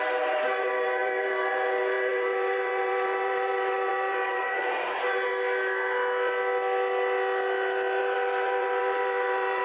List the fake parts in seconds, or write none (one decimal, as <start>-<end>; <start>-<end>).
0.0-5.3; 8.0-9.6